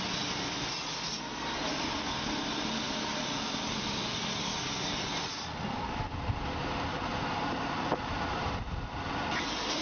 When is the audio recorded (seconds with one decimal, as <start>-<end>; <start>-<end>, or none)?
0.0-9.8